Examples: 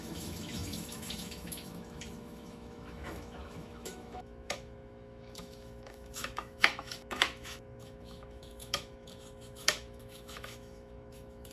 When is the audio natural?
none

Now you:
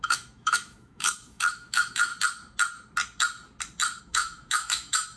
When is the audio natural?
2.1-4.0

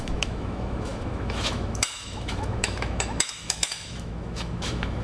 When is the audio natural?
none

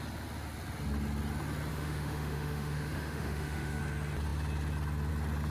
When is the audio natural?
0.0-1.7; 3.8-5.5